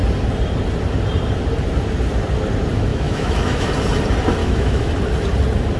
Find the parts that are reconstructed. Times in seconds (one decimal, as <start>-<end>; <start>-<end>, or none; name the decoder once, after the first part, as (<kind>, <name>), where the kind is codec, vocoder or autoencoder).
2.9-3.7 (autoencoder, DAC-VAE); 4.4-4.9